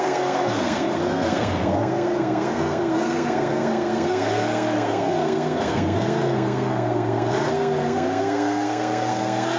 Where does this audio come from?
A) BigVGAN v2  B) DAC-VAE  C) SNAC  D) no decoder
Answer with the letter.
C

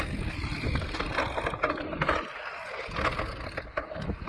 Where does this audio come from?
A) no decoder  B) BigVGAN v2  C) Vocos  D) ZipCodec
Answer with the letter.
A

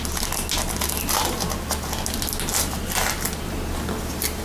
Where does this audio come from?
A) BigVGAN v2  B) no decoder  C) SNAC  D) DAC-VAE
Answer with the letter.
B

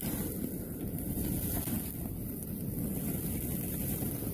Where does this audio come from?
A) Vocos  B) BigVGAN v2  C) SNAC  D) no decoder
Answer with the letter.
D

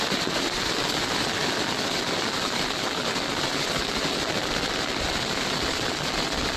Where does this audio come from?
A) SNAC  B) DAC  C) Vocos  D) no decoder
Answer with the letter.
D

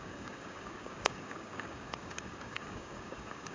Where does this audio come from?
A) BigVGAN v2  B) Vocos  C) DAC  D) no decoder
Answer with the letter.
C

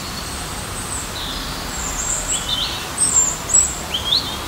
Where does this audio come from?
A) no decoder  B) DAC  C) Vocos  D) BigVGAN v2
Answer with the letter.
D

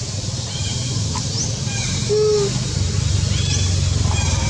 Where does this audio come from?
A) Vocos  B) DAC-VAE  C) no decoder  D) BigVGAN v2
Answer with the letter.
C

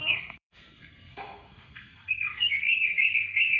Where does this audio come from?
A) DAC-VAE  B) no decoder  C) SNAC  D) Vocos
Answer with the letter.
C